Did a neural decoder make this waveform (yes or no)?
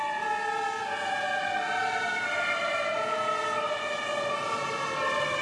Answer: no